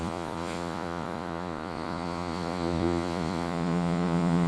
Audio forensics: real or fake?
fake